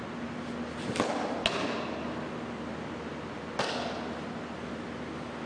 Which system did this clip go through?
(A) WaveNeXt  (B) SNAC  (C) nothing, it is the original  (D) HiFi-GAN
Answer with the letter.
C